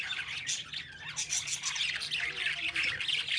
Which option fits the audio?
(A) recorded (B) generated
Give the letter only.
A